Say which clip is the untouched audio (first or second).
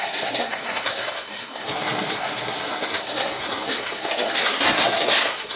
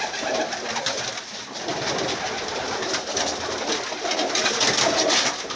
second